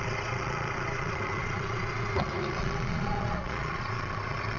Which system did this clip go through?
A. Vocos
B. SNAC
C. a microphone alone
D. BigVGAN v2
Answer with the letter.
A